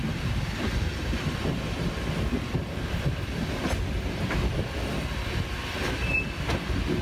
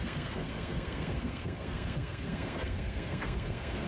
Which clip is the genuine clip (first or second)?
first